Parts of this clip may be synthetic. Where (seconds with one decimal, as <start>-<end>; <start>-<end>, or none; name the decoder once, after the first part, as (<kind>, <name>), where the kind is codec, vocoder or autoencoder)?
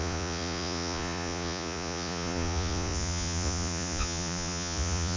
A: 0.0-5.2 (vocoder, Vocos)